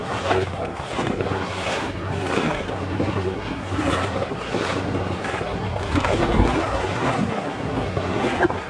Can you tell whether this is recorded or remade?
remade